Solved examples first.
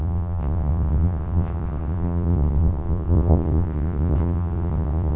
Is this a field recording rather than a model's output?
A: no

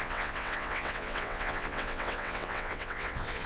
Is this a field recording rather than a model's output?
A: no